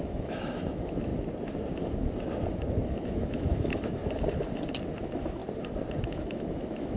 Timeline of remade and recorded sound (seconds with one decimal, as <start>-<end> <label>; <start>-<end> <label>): 0.0-1.1 remade; 1.1-2.9 recorded; 2.9-4.0 remade; 4.0-5.0 recorded; 5.0-5.4 remade; 5.4-6.0 recorded; 6.0-7.0 remade